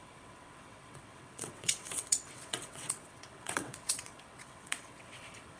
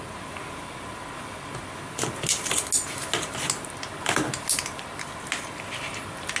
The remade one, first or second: first